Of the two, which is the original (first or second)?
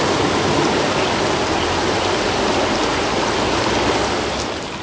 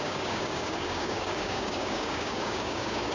first